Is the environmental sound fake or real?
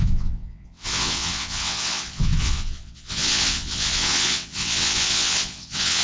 fake